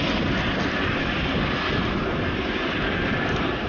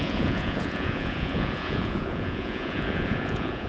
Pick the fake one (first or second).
second